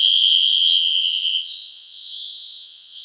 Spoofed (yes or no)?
yes